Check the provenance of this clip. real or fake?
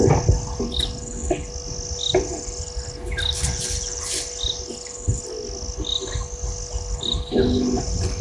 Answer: real